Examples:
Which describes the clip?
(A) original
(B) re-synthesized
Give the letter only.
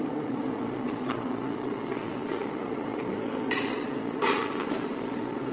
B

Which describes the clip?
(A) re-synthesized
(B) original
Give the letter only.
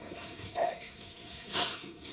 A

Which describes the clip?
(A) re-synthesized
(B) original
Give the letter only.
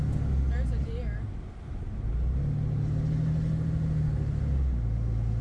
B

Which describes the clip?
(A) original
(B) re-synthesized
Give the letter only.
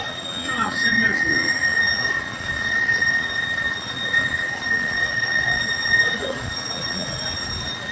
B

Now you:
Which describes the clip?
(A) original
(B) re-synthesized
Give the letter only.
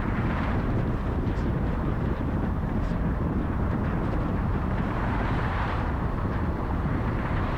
B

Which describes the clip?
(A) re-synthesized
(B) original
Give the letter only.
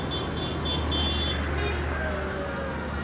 B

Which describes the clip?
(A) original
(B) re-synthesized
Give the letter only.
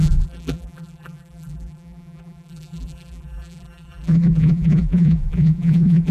B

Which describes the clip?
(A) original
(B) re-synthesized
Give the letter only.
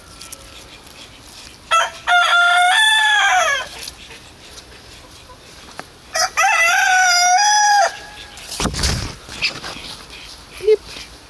A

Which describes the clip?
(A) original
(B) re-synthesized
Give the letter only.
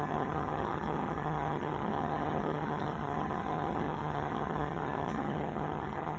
B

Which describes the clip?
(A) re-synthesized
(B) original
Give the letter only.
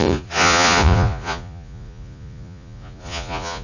A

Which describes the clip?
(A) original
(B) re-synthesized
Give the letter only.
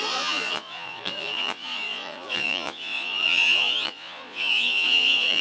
B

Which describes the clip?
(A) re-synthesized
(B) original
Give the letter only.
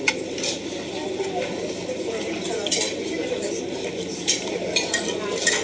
B